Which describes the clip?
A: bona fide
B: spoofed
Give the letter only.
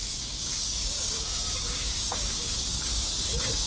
B